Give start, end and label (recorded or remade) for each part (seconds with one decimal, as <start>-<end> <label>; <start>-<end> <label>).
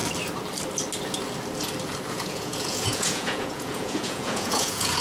0.0-2.1 recorded; 2.1-5.0 remade